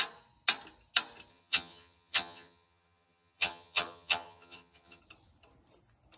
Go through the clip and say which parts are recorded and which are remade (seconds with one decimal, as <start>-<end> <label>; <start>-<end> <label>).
0.0-1.3 recorded; 1.3-5.0 remade; 5.0-6.2 recorded